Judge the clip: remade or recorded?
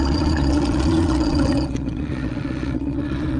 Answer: remade